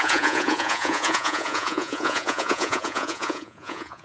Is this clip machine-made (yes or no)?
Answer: yes